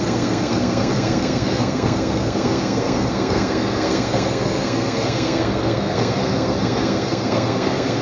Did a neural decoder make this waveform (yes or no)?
yes